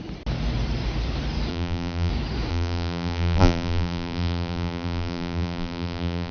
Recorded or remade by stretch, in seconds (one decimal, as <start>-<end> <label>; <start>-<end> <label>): 0.0-1.5 recorded; 1.5-2.1 remade; 2.1-2.5 recorded; 2.5-6.3 remade